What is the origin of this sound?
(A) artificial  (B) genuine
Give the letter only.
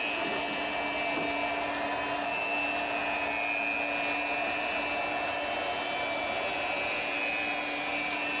B